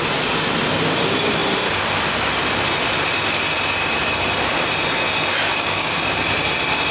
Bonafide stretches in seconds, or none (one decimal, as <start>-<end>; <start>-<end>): 0.0-5.5; 6.0-6.9

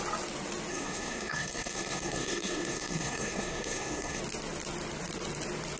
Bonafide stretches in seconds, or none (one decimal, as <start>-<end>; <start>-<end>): 0.0-0.7; 4.2-5.8